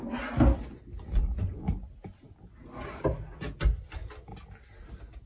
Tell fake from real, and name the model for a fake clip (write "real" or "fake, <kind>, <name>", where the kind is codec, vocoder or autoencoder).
real